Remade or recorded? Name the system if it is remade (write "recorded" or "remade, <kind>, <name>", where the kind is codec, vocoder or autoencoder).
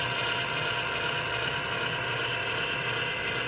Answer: recorded